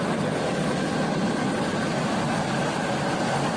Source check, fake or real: real